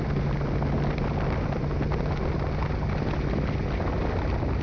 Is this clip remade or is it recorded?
recorded